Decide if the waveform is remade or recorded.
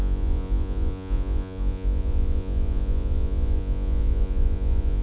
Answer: remade